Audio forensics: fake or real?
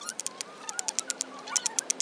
real